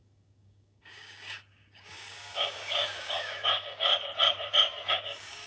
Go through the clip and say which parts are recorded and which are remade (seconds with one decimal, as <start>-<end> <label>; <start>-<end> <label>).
0.0-3.9 remade; 3.9-4.9 recorded; 4.9-5.5 remade